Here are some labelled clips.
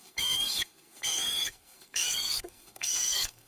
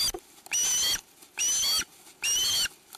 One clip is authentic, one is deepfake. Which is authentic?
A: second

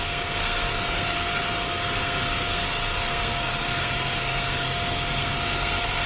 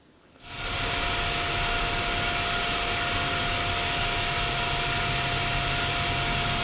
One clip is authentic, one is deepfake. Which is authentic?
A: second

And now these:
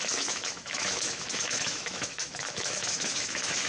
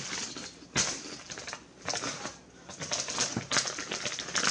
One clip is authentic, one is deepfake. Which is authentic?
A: second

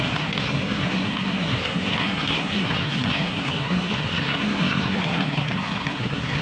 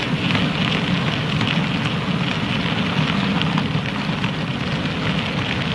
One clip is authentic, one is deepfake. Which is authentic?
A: second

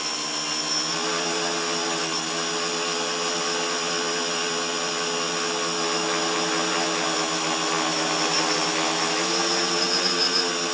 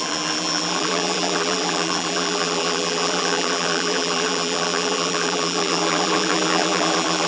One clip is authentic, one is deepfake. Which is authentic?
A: first